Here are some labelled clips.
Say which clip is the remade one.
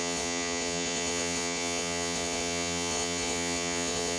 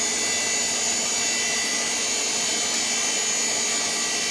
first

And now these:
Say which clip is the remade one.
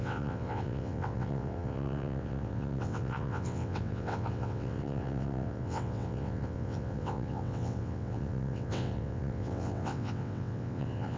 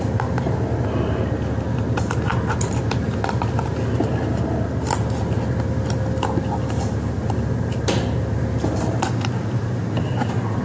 first